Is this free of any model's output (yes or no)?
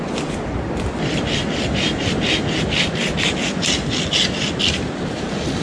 yes